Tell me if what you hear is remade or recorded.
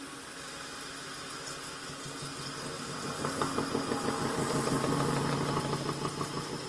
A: recorded